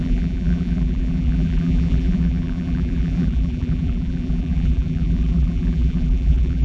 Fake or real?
fake